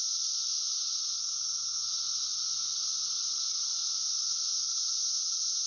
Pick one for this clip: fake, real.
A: real